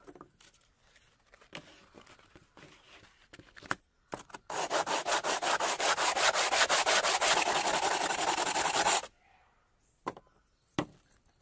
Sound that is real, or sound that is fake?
real